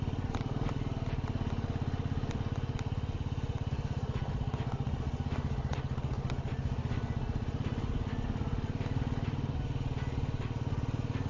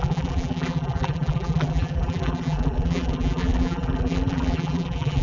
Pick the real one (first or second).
first